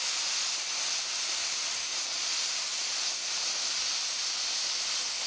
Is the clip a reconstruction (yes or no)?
no